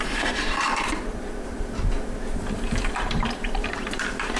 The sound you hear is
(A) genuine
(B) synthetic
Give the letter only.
B